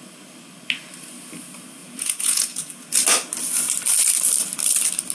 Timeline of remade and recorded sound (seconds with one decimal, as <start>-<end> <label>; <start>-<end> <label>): 0.0-1.8 recorded; 1.8-2.9 remade; 2.9-5.1 recorded